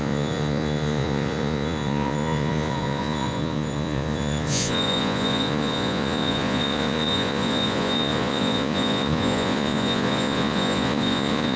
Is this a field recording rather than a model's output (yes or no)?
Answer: no